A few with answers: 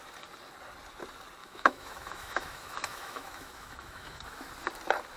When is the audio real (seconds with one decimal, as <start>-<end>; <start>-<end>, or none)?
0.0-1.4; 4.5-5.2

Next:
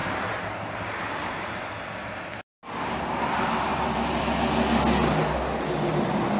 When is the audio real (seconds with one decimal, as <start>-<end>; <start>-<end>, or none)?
1.6-3.7; 4.2-6.4

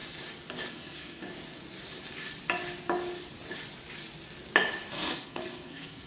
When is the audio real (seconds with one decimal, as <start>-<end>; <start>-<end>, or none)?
0.0-0.7; 1.2-4.9